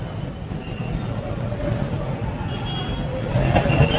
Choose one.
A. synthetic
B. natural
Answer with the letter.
B